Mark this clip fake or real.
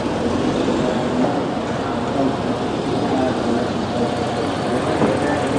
real